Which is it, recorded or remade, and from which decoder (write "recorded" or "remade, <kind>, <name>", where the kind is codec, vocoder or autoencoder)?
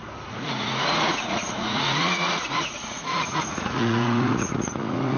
remade, vocoder, Vocos